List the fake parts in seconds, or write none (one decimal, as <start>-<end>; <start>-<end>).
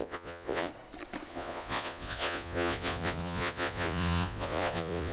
0.0-0.7; 1.3-5.1